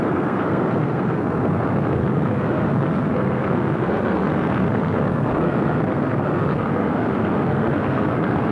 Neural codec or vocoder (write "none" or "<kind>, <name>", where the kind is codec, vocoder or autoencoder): codec, SNAC